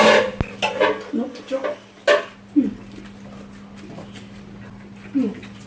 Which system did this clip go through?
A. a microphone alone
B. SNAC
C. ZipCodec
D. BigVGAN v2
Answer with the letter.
A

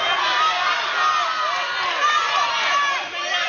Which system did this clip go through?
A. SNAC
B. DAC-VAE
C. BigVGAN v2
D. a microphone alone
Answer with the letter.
D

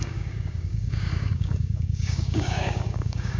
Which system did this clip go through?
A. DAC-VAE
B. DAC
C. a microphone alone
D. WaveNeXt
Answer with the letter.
B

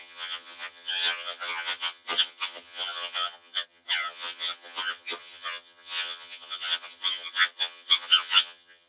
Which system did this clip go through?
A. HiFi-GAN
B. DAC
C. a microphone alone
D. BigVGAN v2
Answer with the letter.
A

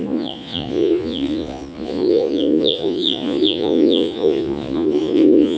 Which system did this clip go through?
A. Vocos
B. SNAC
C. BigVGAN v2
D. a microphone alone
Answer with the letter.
A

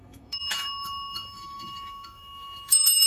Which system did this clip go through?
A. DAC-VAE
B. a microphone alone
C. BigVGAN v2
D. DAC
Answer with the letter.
A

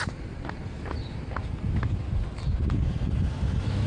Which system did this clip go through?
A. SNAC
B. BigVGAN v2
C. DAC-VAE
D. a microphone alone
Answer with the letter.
D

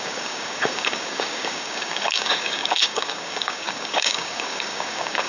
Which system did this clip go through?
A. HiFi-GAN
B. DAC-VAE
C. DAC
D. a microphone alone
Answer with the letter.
C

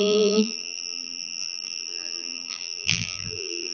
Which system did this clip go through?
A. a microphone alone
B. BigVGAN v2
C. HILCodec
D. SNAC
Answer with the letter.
B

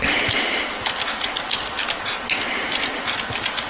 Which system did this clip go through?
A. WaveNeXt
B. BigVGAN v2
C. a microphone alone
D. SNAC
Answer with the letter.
C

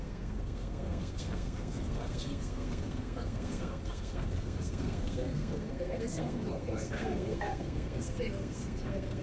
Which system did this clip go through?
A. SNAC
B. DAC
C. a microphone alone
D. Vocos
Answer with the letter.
A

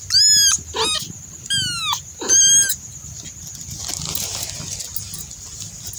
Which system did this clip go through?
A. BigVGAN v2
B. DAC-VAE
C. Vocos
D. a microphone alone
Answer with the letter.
D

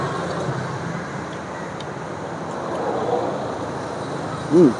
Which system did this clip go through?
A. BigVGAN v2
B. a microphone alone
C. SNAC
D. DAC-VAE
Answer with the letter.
B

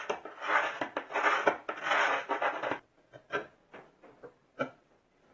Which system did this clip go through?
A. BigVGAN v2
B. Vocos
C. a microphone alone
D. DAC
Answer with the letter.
A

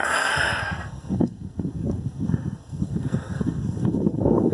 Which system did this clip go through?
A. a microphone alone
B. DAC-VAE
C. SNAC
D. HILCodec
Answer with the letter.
C